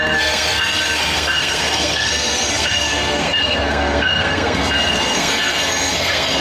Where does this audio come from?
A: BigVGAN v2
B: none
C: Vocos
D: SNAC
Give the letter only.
D